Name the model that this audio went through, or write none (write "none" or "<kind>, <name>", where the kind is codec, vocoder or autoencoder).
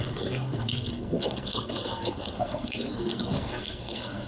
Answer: codec, SNAC